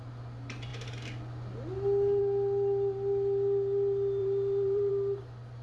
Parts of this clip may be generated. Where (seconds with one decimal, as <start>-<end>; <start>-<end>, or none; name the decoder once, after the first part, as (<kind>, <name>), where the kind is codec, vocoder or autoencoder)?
4.2-4.9 (vocoder, BigVGAN v2)